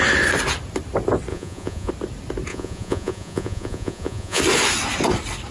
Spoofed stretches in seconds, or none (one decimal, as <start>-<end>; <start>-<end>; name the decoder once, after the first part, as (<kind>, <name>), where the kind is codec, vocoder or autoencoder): 1.3-1.9 (vocoder, Vocos); 2.5-4.4